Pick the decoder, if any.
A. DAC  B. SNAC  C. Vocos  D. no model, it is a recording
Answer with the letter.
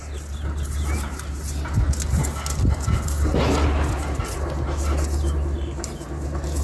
D